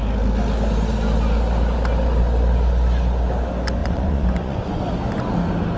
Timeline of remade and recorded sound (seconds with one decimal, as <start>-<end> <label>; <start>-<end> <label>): 0.0-3.8 recorded; 3.8-4.8 remade; 4.8-5.8 recorded